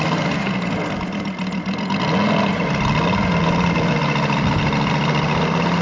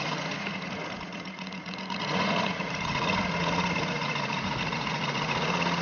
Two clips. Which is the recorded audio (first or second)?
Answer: first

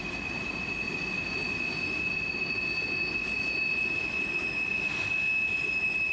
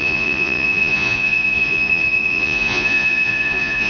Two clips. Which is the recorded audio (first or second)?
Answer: first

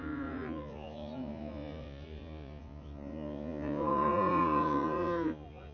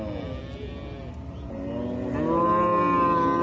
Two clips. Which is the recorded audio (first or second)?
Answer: second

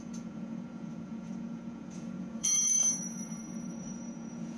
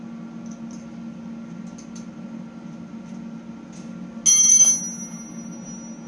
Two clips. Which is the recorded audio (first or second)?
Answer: second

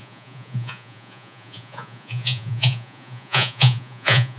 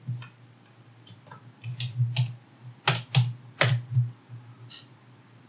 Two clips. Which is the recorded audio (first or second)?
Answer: second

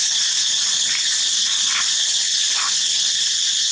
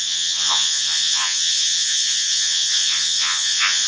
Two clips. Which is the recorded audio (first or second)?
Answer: first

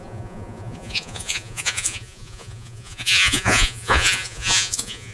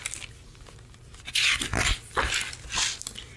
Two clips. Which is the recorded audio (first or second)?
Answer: second